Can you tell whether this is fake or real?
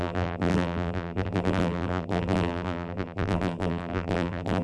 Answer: fake